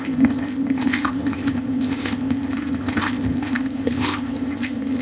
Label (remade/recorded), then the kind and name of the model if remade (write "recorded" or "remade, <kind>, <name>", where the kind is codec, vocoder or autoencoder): remade, codec, ZipCodec